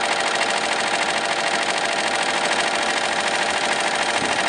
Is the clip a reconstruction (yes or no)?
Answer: no